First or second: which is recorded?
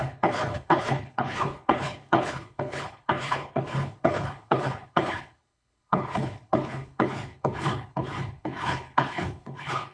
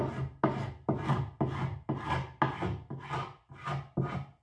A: second